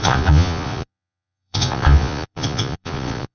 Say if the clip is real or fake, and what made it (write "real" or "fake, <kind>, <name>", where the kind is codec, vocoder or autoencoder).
fake, vocoder, Vocos